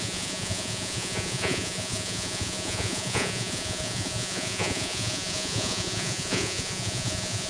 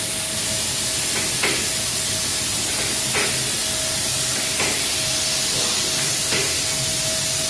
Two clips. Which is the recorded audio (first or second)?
second